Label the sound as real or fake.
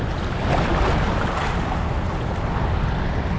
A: real